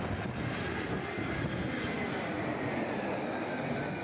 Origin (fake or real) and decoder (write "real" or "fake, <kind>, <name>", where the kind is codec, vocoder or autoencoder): real